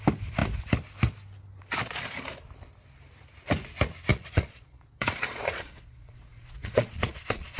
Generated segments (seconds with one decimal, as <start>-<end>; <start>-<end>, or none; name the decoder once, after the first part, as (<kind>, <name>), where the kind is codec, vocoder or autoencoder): 4.1-7.6 (vocoder, Vocos)